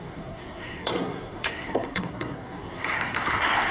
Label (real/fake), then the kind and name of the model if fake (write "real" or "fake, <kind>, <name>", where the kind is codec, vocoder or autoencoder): fake, codec, SNAC